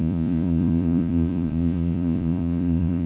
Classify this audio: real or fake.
fake